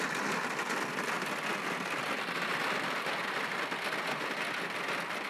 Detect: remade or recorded recorded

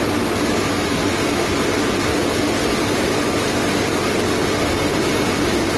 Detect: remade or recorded recorded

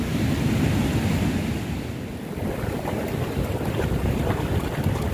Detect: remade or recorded remade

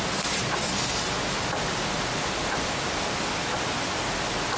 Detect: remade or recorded recorded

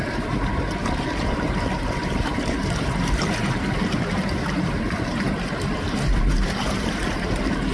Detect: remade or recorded remade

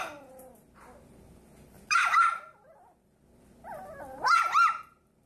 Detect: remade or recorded remade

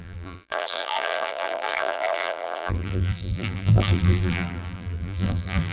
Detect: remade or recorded remade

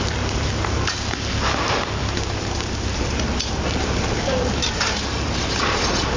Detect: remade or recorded remade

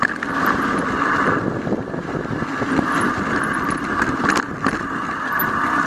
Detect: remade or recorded recorded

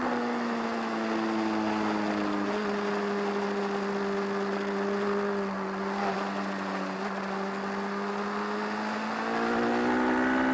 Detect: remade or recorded recorded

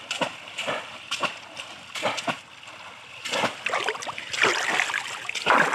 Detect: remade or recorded recorded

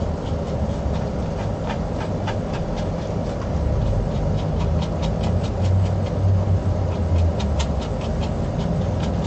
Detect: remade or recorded recorded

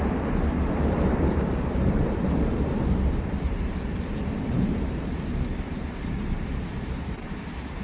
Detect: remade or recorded remade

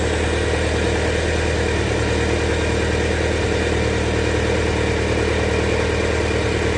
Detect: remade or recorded recorded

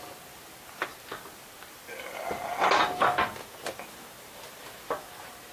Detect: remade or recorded recorded